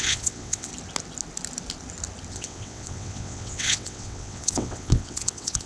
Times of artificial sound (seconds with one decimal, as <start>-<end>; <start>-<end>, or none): 0.0-0.7; 2.3-5.7